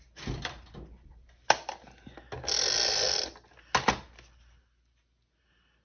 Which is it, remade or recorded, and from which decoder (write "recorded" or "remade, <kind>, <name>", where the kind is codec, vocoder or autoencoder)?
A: recorded